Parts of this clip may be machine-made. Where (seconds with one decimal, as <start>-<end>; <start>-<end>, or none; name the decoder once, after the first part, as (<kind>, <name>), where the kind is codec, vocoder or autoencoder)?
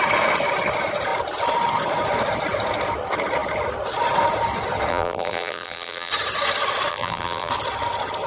4.9-6.1 (vocoder, BigVGAN v2); 6.9-7.5